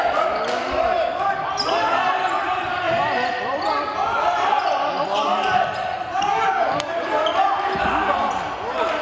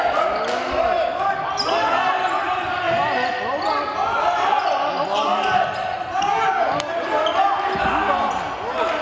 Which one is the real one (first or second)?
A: second